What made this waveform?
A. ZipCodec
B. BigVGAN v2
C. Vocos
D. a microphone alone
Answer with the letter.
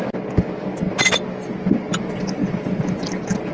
D